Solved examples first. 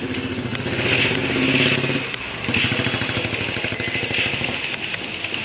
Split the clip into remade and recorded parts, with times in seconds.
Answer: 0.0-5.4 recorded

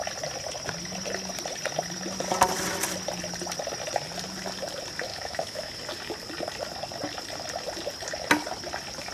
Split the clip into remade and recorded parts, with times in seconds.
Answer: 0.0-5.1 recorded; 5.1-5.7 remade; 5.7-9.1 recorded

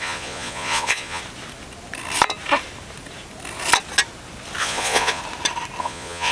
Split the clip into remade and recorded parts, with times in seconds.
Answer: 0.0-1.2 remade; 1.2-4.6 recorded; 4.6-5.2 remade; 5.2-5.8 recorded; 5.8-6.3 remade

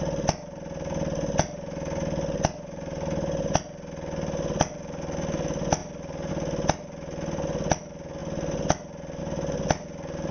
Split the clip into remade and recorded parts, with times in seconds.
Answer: 0.0-10.3 recorded